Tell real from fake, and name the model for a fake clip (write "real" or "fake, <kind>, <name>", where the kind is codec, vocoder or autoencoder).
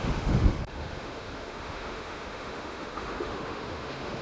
fake, autoencoder, DAC-VAE